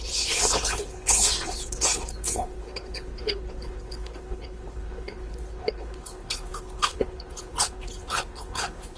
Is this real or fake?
fake